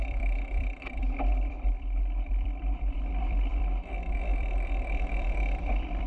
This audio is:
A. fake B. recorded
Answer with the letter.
A